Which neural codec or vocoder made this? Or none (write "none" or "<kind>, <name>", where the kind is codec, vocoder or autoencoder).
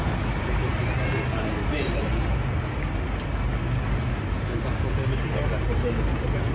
none